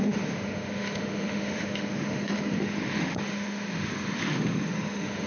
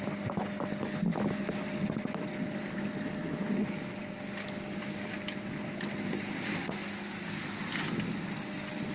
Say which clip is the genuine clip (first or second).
second